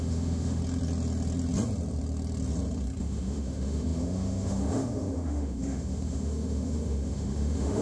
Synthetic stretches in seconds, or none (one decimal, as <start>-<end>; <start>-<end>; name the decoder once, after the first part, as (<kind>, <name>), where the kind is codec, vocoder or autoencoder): 0.0-0.6 (autoencoder, DAC-VAE); 3.0-7.8